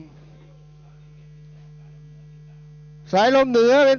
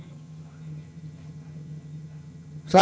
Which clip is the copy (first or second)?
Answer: second